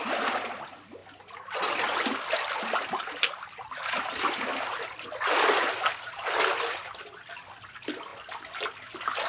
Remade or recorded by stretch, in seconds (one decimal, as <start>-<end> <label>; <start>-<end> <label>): 0.0-9.3 recorded